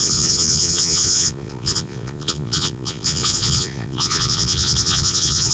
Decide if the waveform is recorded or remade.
remade